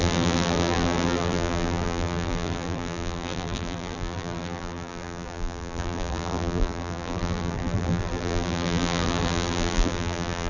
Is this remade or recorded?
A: remade